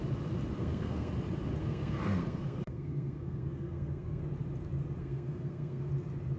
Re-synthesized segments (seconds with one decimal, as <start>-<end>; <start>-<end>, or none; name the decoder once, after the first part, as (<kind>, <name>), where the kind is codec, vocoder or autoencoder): 0.6-1.1 (codec, SNAC); 1.6-4.2; 5.0-5.9